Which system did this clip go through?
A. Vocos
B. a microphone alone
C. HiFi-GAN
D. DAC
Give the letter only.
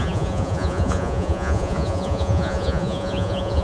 A